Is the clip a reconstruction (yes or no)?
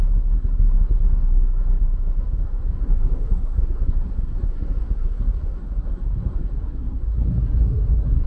yes